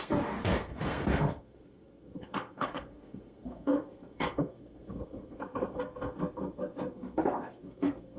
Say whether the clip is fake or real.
fake